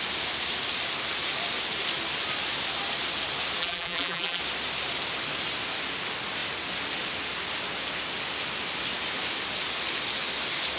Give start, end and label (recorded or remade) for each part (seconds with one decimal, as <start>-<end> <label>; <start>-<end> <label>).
0.0-3.6 recorded; 3.6-4.4 remade; 4.4-10.8 recorded